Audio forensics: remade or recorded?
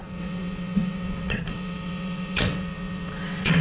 remade